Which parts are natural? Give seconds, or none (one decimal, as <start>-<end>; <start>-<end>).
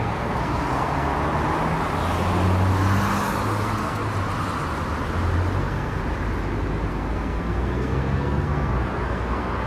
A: 1.1-3.6; 4.0-5.6; 6.0-6.9